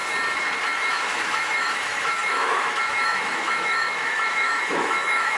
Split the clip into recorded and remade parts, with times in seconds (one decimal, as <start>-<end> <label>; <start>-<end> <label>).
0.0-0.9 recorded; 0.9-5.4 remade